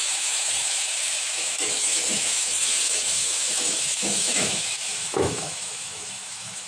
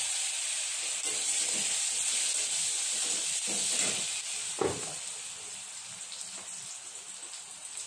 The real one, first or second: second